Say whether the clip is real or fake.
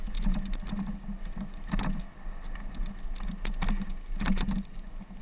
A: real